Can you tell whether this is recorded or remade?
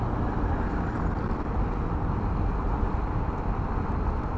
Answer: recorded